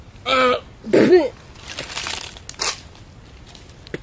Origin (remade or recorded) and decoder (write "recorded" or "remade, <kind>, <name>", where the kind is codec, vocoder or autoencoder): recorded